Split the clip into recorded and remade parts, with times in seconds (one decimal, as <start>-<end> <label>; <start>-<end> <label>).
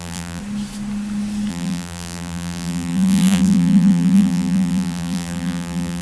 0.0-0.4 remade; 0.4-1.5 recorded; 1.5-6.0 remade